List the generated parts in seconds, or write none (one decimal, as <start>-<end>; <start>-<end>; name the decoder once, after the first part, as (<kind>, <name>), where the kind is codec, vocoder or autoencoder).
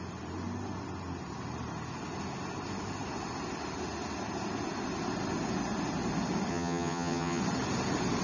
6.5-7.4 (vocoder, HiFi-GAN)